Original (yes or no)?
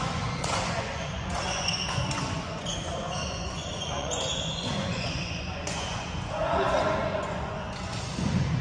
no